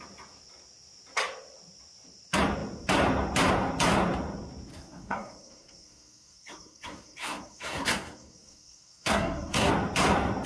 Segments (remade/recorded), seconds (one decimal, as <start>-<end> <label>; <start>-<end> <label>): 0.0-4.7 recorded; 4.7-9.7 remade; 9.7-10.5 recorded